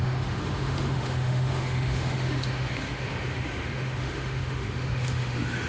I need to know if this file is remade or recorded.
remade